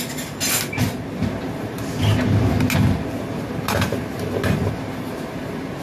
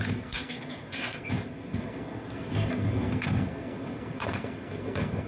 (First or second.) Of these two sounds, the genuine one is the first